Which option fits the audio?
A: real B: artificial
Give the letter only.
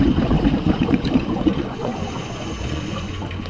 B